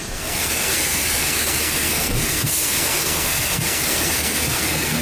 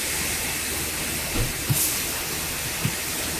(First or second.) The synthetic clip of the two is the first